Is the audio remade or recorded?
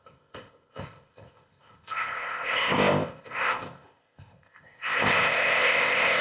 remade